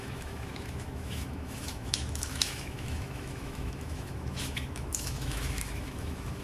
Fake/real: fake